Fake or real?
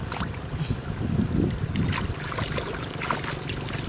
real